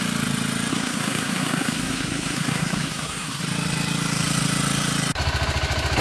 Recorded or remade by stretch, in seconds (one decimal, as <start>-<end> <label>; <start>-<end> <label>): 0.0-0.7 recorded; 0.7-3.4 remade; 3.4-6.0 recorded